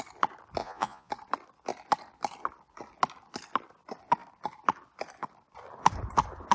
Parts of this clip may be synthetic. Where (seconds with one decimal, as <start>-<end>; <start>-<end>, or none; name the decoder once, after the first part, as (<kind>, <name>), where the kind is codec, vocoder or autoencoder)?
0.6-1.1 (vocoder, Vocos)